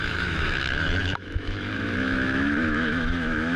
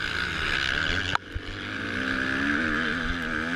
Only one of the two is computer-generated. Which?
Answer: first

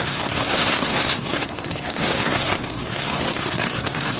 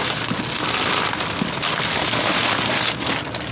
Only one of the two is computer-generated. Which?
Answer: first